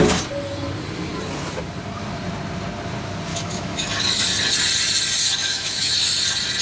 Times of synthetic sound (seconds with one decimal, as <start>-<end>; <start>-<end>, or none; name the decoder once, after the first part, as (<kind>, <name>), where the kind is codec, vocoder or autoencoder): 3.3-3.9 (autoencoder, DAC-VAE); 5.4-5.9